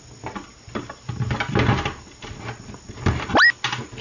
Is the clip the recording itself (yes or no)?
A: yes